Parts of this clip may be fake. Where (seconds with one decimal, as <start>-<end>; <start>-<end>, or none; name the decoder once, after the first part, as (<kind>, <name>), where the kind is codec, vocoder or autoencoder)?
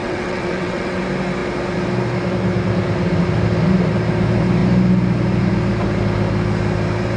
0.0-1.0 (vocoder, WaveNeXt)